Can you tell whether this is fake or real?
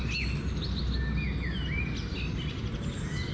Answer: real